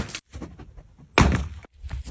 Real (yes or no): yes